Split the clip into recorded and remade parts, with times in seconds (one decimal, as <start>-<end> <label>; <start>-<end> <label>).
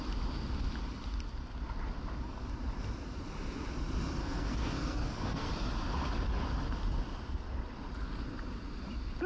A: 0.0-4.2 recorded; 4.2-5.5 remade; 5.5-9.3 recorded